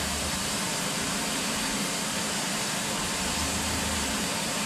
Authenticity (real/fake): fake